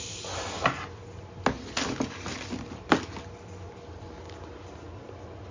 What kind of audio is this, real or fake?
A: real